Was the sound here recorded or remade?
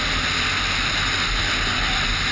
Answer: recorded